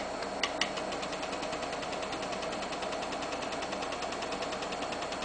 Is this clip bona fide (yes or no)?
yes